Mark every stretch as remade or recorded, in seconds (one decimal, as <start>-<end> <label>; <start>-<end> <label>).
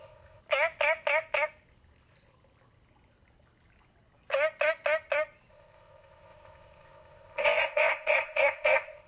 0.0-0.4 remade; 0.4-5.5 recorded; 5.5-9.1 remade